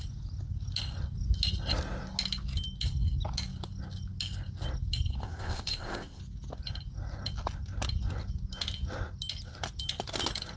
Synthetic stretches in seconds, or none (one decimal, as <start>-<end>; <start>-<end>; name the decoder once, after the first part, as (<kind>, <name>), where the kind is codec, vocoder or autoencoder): 5.2-6.2 (codec, ZipCodec)